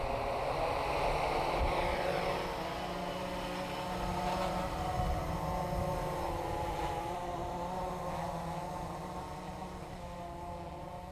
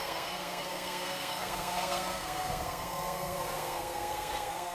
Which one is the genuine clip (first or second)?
first